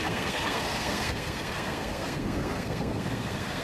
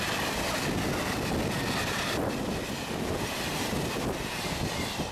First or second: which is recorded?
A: second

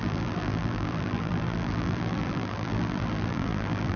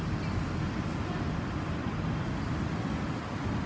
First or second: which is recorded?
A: second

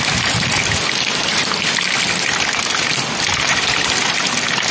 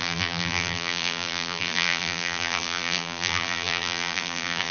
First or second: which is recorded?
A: first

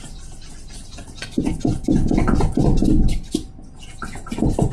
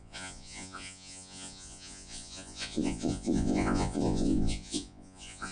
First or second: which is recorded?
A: first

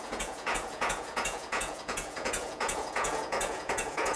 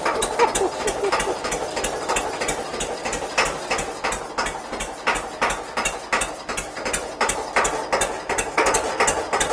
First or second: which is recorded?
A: second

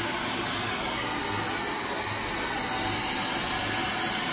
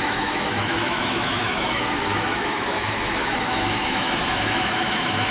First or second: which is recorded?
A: first